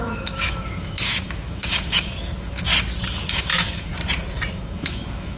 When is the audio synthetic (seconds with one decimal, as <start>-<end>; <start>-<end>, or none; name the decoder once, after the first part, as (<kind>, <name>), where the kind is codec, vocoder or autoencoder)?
0.0-2.7 (autoencoder, DAC-VAE); 3.3-3.9; 4.5-5.4